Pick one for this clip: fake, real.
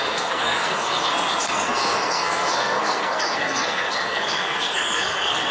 fake